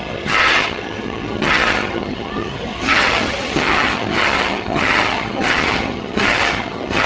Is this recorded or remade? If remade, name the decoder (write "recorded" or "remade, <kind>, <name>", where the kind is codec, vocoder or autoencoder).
remade, vocoder, HiFi-GAN